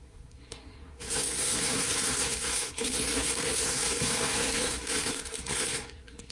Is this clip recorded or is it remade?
remade